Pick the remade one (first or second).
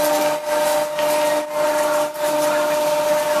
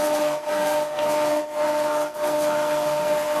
second